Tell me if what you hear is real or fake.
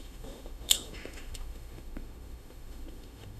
fake